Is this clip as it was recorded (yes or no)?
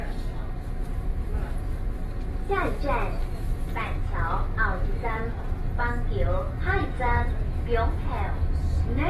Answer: yes